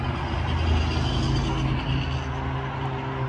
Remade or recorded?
recorded